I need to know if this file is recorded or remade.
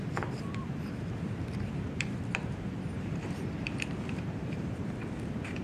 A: remade